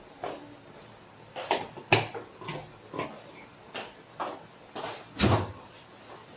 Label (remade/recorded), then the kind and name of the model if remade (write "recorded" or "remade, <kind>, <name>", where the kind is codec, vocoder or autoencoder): recorded